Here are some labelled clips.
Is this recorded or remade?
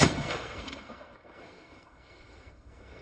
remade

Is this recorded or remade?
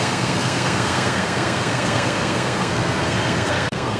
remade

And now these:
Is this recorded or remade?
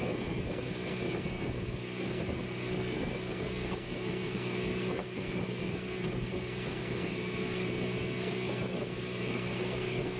remade